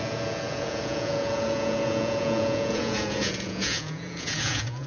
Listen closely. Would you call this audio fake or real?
fake